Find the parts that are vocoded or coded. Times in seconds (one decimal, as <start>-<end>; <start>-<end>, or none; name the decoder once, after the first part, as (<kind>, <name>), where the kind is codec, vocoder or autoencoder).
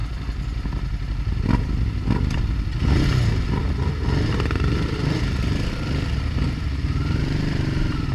4.3-5.0 (vocoder, BigVGAN v2); 7.2-8.1